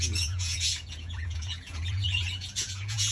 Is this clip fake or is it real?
fake